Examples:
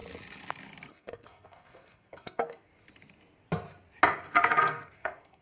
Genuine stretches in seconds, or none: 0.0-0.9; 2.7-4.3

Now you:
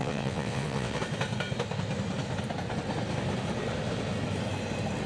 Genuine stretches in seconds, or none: 1.0-5.1

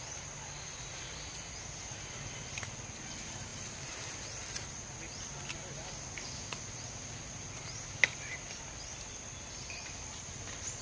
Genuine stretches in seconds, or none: 0.0-10.8

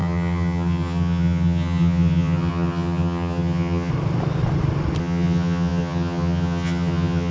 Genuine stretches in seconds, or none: 3.9-5.0